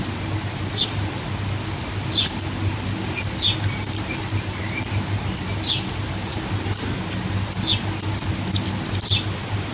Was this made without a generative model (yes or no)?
yes